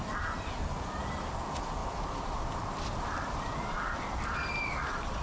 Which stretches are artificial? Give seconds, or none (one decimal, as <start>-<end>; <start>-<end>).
1.8-4.5

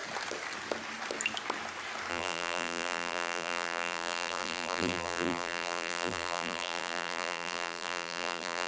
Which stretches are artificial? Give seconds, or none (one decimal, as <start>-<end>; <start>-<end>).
2.1-8.7

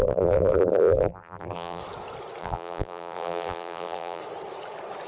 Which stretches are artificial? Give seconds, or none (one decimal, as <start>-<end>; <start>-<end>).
0.0-1.8; 2.4-4.2

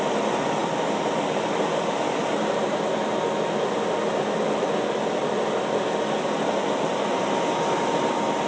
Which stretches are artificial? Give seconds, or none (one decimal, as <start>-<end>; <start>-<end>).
6.9-8.0

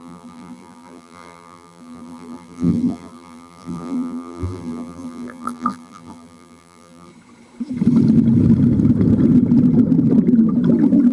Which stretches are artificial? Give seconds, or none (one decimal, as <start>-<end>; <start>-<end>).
0.0-7.1

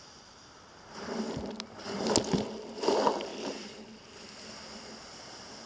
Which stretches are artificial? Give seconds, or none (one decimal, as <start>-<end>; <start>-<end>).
3.3-3.8